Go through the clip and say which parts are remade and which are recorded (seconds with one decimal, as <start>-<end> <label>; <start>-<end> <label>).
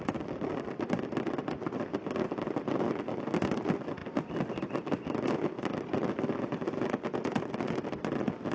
0.0-8.5 recorded